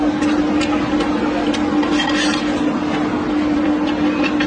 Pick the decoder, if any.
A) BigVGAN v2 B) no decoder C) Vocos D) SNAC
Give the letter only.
B